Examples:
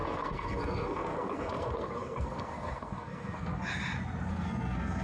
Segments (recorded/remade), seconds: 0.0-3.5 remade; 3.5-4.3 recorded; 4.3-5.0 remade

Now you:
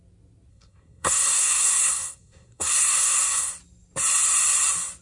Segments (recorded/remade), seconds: 0.0-0.5 recorded; 0.5-3.5 remade; 3.5-5.0 recorded

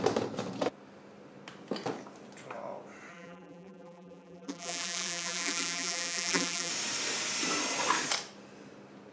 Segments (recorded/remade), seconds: 0.0-3.1 recorded; 3.1-6.7 remade; 6.7-9.1 recorded

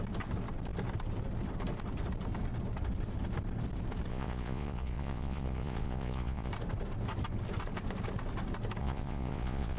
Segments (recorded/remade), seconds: 0.0-4.1 recorded; 4.1-6.5 remade; 6.5-8.8 recorded; 8.8-9.8 remade

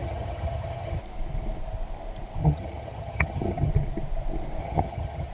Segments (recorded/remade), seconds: 0.0-1.0 remade; 1.0-2.4 recorded; 2.4-3.7 remade; 3.7-4.6 recorded; 4.6-5.3 remade

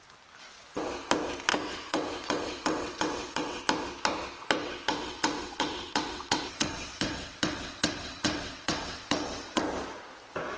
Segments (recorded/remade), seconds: 0.0-1.5 recorded; 1.5-3.6 remade; 3.6-4.6 recorded; 4.6-9.6 remade; 9.6-10.6 recorded